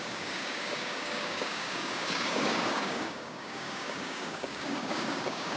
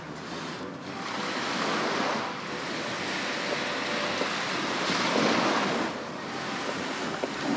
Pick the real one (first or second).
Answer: second